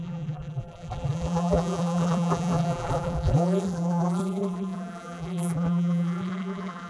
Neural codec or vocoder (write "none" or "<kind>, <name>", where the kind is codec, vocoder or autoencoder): vocoder, BigVGAN v2